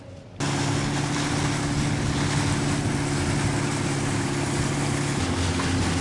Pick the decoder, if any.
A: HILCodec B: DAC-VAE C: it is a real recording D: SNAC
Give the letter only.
C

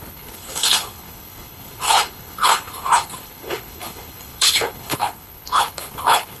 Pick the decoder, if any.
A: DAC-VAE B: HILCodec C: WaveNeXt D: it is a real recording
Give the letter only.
B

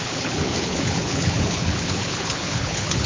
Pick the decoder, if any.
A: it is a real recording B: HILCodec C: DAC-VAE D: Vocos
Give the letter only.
B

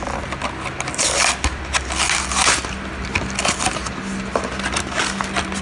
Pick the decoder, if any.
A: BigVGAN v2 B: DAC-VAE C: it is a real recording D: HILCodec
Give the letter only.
C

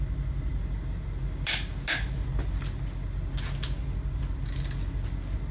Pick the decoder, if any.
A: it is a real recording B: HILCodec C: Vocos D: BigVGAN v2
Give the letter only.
A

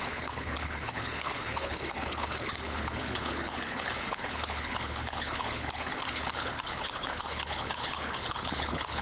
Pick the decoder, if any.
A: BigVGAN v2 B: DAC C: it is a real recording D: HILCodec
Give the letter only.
D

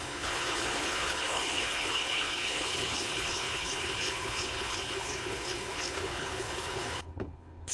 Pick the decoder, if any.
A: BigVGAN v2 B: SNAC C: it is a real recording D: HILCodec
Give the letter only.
D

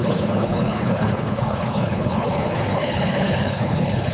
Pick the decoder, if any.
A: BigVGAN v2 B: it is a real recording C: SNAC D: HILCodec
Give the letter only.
D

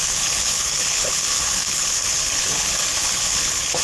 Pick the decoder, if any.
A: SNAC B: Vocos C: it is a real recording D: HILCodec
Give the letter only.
D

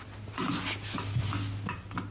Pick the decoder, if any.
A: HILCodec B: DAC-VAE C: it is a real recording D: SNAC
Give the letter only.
C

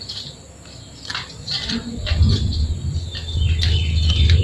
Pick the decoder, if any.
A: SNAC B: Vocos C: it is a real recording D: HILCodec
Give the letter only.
C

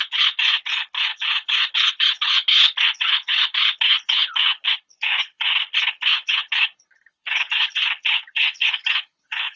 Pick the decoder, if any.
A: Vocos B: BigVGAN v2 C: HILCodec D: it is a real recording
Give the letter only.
C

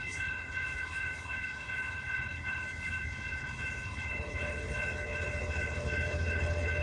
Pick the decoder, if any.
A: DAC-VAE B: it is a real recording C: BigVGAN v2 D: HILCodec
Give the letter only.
D